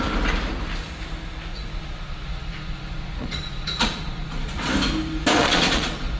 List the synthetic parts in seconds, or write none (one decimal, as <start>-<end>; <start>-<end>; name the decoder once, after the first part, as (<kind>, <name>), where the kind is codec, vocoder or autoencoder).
1.5-4.7 (vocoder, Vocos); 5.4-6.2